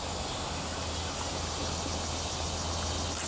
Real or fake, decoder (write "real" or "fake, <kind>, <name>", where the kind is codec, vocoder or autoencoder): real